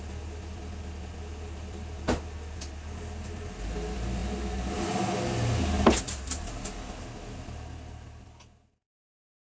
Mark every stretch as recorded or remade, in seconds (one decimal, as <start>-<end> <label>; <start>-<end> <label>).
0.0-9.4 recorded